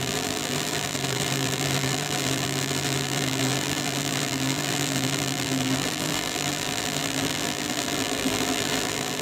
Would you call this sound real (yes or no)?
no